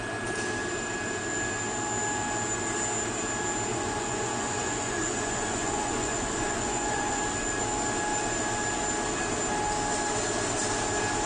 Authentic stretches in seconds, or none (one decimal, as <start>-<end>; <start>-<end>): 0.0-3.7; 7.2-11.3